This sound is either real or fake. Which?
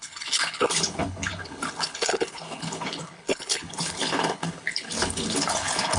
fake